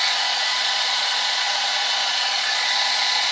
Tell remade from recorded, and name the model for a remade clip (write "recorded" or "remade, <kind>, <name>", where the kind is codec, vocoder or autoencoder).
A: remade, vocoder, Vocos